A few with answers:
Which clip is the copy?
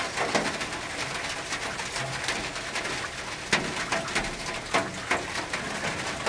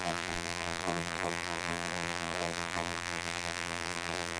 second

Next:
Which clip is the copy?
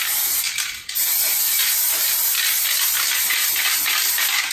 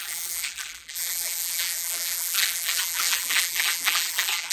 second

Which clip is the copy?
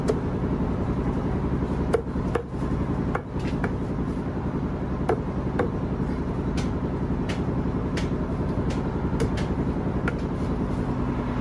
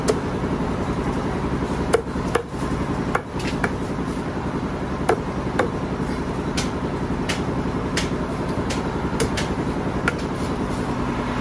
second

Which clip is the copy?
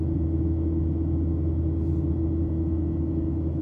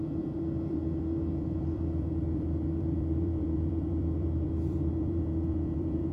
second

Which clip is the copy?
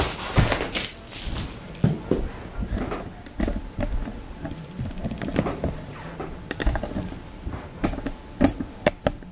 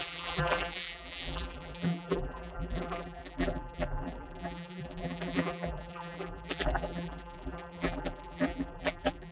second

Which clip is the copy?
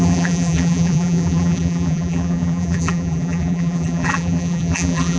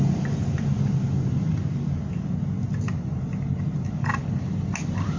first